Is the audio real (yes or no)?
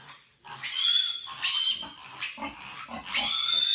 yes